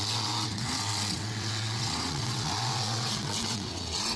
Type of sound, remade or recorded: remade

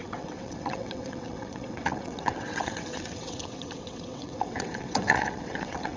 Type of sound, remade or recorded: remade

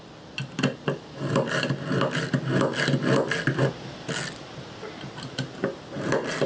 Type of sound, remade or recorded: recorded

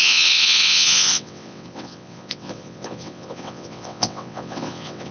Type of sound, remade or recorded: remade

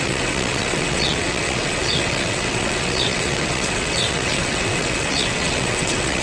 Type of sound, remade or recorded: remade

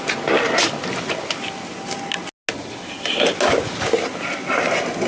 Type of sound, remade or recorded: recorded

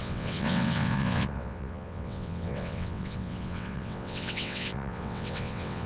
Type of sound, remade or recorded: remade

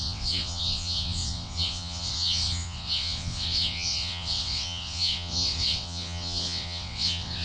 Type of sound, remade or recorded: remade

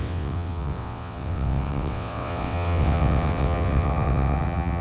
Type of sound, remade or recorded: remade